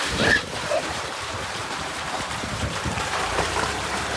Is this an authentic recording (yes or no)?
no